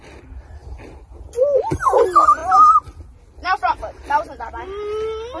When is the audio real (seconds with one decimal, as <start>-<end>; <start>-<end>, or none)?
0.0-5.4